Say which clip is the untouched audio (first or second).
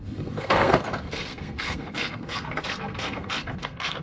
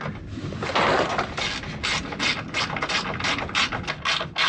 second